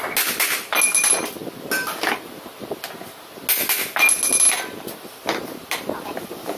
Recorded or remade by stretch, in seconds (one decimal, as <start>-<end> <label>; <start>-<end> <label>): 0.0-6.6 recorded